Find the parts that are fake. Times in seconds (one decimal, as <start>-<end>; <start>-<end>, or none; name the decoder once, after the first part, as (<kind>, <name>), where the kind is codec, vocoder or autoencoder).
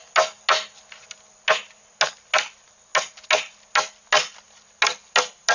none